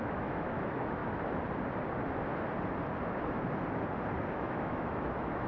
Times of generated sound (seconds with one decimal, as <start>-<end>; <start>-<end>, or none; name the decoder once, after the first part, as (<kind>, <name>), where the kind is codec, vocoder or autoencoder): 0.0-1.0 (autoencoder, DAC-VAE); 4.3-5.5